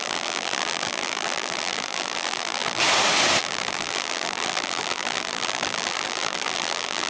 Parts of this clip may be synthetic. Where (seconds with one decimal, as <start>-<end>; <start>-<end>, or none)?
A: 0.0-2.8; 3.4-7.1